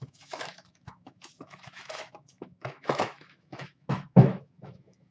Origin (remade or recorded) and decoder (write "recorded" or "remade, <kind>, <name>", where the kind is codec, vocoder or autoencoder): remade, autoencoder, DAC-VAE